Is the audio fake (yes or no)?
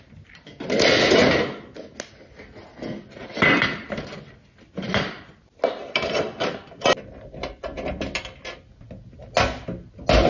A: no